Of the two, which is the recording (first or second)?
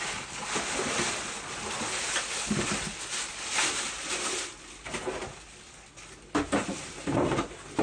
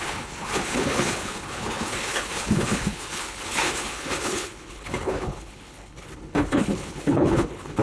first